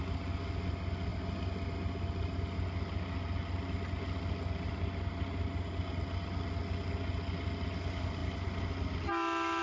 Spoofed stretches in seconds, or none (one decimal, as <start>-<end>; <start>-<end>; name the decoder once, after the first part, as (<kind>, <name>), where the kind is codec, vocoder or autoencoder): none